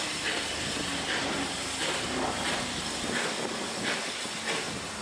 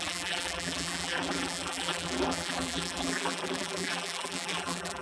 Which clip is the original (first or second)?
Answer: first